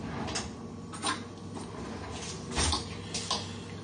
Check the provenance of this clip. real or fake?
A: real